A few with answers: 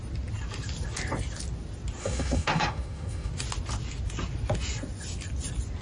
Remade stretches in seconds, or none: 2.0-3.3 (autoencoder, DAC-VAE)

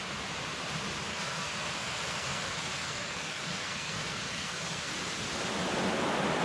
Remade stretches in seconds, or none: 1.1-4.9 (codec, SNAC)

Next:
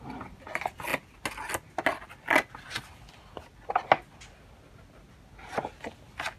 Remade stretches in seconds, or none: none

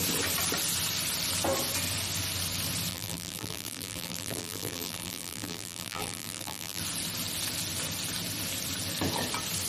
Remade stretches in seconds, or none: 2.9-6.8 (vocoder, BigVGAN v2)

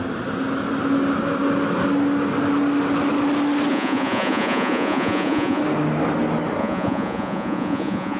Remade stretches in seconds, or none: 3.7-5.6 (vocoder, Vocos); 6.6-8.2

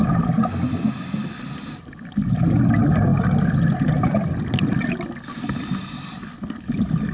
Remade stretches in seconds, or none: none

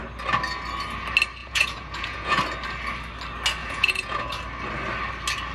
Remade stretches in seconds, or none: 1.4-2.4 (vocoder, Vocos); 3.6-4.4

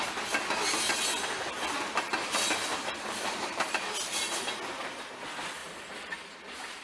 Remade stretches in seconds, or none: 2.7-3.7 (vocoder, BigVGAN v2); 5.6-6.8